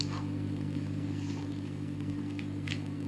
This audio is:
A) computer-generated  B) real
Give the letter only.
A